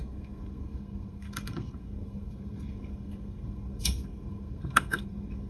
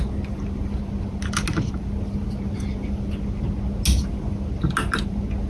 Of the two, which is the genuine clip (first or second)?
second